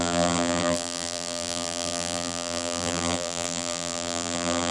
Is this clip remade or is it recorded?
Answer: remade